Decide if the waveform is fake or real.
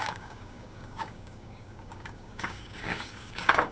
fake